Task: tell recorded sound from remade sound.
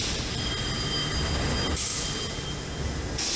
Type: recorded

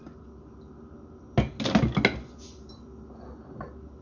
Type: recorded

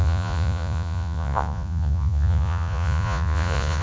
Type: remade